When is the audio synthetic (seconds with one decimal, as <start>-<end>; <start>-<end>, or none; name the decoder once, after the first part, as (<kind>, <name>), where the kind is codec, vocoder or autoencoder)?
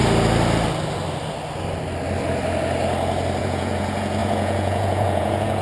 3.4-5.6 (vocoder, Vocos)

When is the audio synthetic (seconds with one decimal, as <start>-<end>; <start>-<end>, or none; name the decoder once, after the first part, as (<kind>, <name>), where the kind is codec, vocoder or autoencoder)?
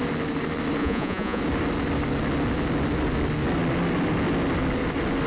0.8-1.4 (vocoder, Vocos)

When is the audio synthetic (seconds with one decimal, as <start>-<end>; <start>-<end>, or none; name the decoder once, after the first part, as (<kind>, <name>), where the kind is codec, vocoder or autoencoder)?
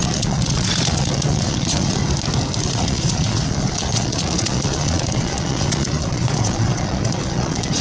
0.0-2.0 (vocoder, Vocos); 2.6-7.8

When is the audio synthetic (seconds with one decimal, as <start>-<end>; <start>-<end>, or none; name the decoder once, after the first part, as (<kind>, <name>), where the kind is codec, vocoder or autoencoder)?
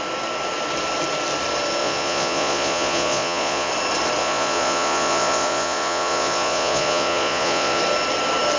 1.8-3.7 (vocoder, Vocos); 4.2-7.8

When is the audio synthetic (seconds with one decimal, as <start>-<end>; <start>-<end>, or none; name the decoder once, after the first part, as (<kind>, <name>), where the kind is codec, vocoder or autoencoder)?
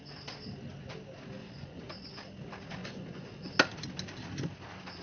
1.4-1.9 (vocoder, Vocos); 2.8-3.5